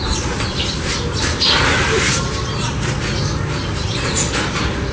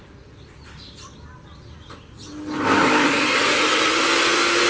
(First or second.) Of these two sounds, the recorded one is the first